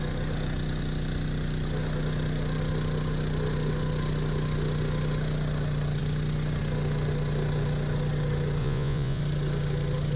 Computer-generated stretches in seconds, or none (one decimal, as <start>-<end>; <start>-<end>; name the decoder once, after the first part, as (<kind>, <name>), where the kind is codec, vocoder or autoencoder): 8.6-9.2 (vocoder, Vocos)